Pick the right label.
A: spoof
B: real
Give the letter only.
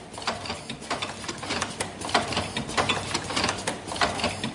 B